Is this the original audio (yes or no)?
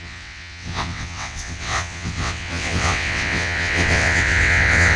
no